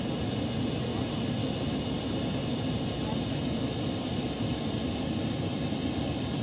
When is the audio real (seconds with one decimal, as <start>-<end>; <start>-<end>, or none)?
0.0-6.4

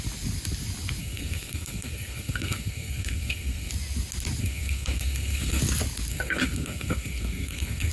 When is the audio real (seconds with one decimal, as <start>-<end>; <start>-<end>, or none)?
0.0-1.0; 3.7-4.4; 5.6-6.1

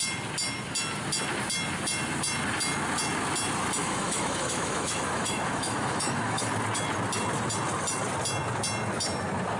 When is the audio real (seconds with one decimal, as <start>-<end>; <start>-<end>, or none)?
0.0-3.8; 6.5-9.6

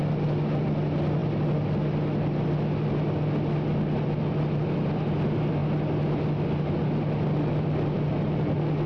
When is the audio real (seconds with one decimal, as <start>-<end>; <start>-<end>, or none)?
0.0-8.9